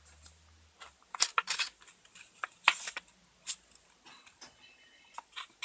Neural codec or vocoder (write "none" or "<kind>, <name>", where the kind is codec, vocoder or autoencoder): none